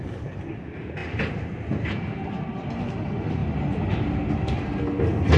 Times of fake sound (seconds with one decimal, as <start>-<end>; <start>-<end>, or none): 3.4-4.3

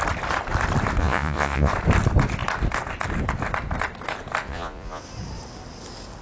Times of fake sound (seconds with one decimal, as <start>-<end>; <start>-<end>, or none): 1.0-1.7; 4.4-5.0

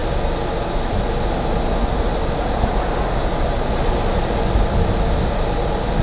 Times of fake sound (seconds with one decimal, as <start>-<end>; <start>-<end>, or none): none

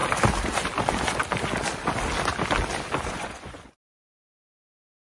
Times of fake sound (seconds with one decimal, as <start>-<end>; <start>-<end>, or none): 3.1-5.2

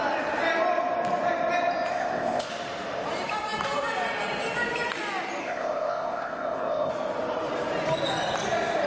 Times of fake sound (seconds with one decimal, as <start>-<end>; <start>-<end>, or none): 1.9-2.5; 5.4-6.9

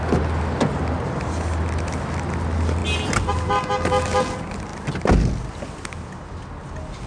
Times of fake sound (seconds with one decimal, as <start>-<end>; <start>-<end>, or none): none

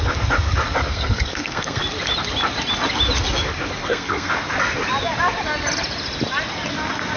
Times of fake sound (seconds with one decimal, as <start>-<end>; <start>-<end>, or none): 0.9-1.8; 3.8-4.3

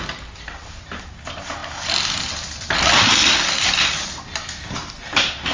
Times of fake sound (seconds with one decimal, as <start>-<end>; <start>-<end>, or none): none